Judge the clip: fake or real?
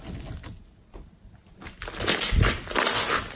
real